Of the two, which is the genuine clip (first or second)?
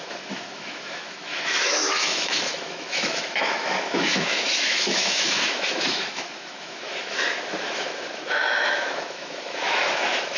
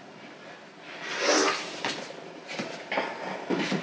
second